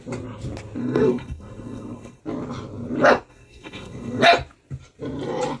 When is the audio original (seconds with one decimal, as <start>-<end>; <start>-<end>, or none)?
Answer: 0.0-0.8; 2.2-3.3; 4.2-5.6

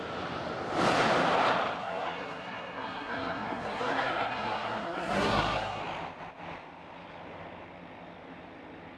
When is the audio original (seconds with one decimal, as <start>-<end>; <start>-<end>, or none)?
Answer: 0.0-1.8; 5.8-9.0

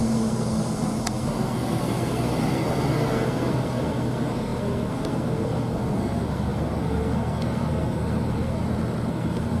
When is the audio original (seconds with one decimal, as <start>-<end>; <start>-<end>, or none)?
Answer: 8.6-9.1